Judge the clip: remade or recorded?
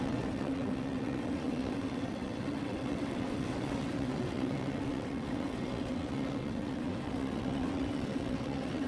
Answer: remade